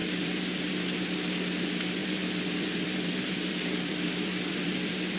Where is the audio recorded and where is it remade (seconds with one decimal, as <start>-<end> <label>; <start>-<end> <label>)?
0.0-0.7 remade; 0.7-2.0 recorded; 2.0-5.2 remade